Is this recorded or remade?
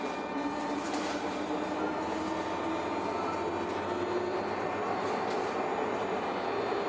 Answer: recorded